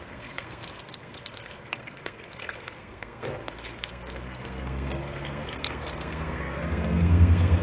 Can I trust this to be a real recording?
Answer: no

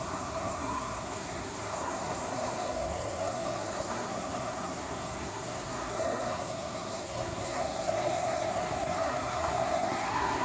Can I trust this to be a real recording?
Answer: no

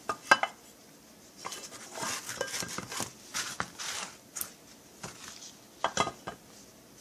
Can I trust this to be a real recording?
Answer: yes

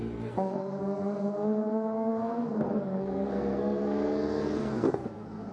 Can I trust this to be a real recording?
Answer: no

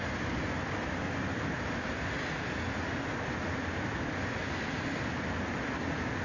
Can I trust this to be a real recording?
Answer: yes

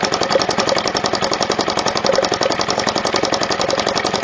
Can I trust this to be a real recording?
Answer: yes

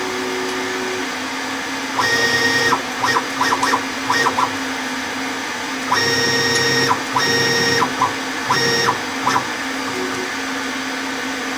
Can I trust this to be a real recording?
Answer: yes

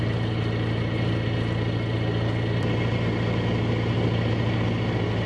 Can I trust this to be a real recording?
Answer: yes